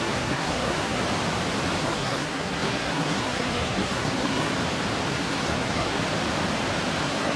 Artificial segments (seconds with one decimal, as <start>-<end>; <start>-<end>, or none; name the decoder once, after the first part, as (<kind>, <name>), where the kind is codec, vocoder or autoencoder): 0.0-1.0 (codec, SNAC); 1.8-4.5; 5.1-6.0; 7.0-7.4